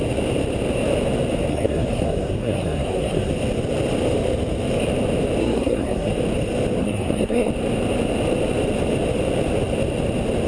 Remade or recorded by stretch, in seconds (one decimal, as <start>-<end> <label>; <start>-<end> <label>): 0.0-1.5 recorded; 1.5-3.3 remade; 3.3-5.4 recorded; 5.4-6.1 remade; 6.1-6.8 recorded; 6.8-7.5 remade; 7.5-10.5 recorded